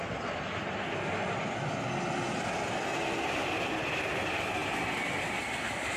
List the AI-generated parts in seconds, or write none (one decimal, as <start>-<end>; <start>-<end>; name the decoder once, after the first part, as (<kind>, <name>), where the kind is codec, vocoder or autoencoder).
none